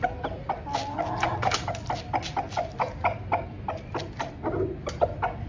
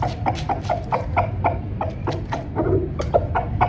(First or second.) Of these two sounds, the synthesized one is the second